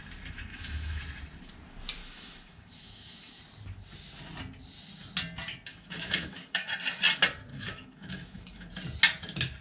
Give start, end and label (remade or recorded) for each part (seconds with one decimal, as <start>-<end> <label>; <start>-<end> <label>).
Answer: 0.0-0.5 recorded; 0.5-1.0 remade; 1.0-2.0 recorded; 2.0-3.4 remade; 3.4-5.7 recorded; 5.7-6.7 remade; 6.7-7.5 recorded; 7.5-8.7 remade; 8.7-9.6 recorded